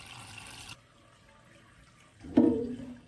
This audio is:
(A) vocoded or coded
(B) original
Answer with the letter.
B